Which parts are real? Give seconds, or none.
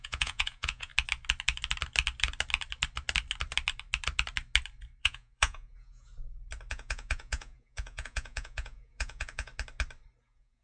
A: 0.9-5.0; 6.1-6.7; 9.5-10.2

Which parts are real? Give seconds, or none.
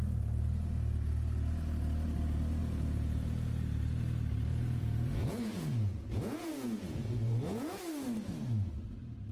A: 0.0-2.6; 3.5-4.5; 7.8-9.3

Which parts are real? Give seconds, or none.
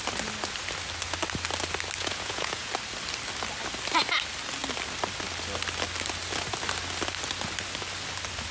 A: 0.0-2.0; 2.7-8.5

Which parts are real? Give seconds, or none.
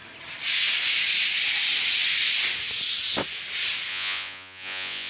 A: 0.0-3.9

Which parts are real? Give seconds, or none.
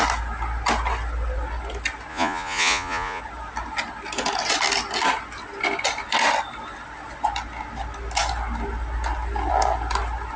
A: 0.0-2.1; 3.2-10.4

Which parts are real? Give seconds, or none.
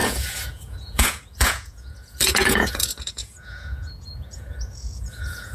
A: none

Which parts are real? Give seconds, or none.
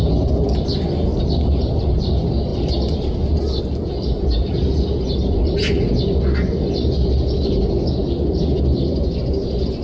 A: 0.0-9.8